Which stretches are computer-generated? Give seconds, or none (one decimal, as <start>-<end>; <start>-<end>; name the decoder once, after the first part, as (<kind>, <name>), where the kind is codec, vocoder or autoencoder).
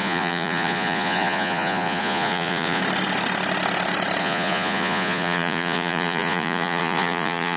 0.0-2.8 (vocoder, Vocos); 4.2-7.6